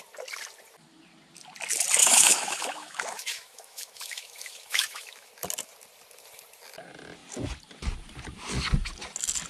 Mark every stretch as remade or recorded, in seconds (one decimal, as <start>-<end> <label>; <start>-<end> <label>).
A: 0.0-2.0 recorded; 2.0-5.3 remade; 5.3-9.5 recorded